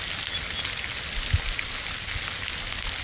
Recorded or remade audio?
recorded